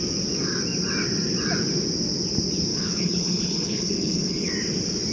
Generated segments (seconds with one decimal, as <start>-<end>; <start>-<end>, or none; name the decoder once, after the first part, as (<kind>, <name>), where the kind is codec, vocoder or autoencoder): 2.7-4.5 (codec, HILCodec)